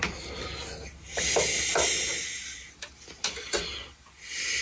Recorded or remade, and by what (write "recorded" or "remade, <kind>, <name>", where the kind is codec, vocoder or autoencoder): recorded